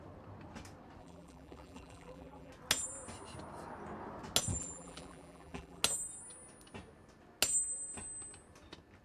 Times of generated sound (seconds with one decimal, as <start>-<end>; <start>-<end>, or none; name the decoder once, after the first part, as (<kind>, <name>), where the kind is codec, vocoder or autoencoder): 1.0-2.5 (vocoder, BigVGAN v2); 4.5-5.8